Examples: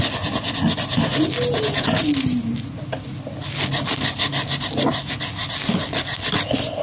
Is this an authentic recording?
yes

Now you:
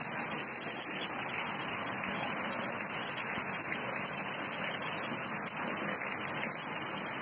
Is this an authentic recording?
yes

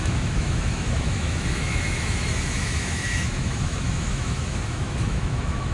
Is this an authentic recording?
no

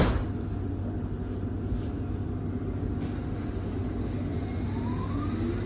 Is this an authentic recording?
yes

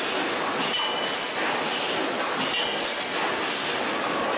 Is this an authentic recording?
yes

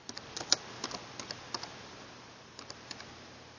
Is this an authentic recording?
yes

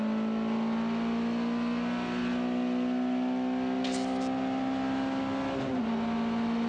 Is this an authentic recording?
yes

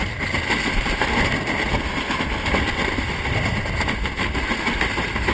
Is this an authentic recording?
yes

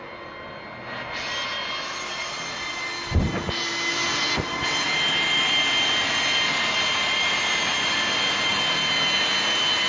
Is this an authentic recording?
yes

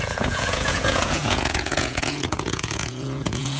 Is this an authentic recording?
no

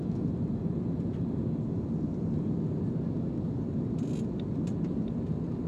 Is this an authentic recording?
yes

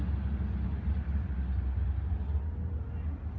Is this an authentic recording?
yes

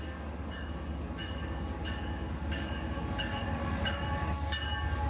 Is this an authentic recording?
no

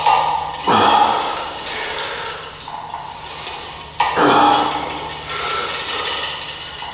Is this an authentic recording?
yes